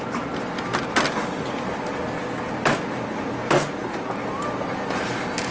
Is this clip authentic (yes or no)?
yes